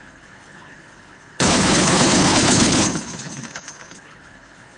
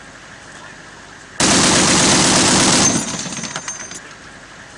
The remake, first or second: first